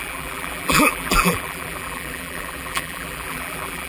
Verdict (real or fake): fake